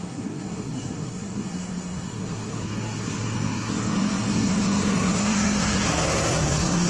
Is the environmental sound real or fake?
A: fake